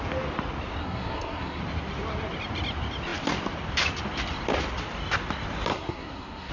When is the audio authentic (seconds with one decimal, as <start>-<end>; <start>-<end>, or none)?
0.0-0.8; 1.6-5.7